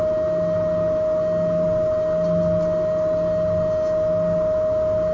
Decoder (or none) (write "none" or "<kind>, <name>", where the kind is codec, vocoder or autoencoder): none